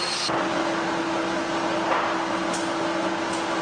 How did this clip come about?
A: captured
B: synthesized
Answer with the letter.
A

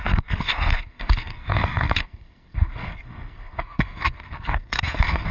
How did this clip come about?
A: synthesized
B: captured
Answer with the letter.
A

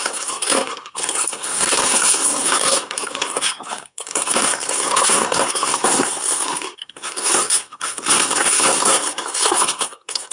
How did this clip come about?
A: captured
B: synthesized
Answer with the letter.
B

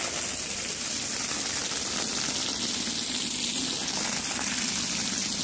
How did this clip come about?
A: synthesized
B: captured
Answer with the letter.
B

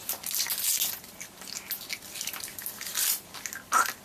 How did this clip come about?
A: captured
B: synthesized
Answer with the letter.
A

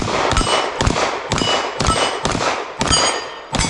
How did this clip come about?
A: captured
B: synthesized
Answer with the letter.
A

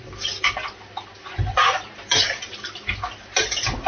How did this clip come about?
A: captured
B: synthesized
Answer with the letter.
A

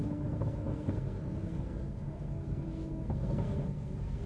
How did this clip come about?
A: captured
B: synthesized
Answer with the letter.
B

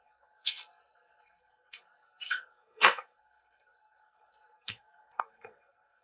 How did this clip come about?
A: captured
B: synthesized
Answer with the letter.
B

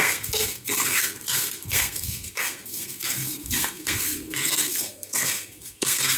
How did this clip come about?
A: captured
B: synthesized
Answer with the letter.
B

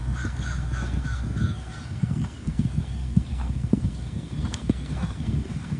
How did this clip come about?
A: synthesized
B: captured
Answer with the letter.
A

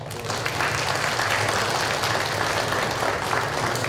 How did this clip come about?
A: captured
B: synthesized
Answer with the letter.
A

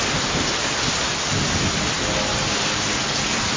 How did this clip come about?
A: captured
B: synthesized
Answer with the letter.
A